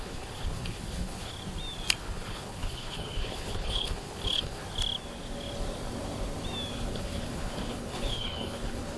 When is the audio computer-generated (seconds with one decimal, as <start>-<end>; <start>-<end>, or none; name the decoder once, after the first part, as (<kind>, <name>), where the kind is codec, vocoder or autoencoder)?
0.0-1.3 (codec, HILCodec); 2.0-4.6; 6.9-9.0